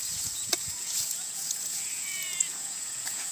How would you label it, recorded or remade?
remade